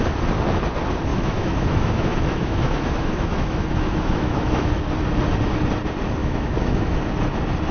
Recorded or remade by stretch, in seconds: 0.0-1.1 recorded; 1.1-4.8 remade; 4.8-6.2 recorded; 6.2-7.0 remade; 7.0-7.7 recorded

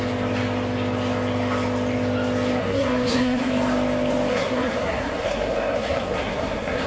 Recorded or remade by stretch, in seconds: 0.0-2.6 recorded; 2.6-3.5 remade; 3.5-4.3 recorded; 4.3-6.9 remade

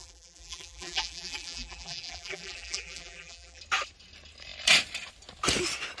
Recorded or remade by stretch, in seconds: 0.0-3.6 remade; 3.6-6.0 recorded